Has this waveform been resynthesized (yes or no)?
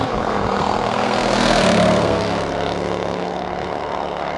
yes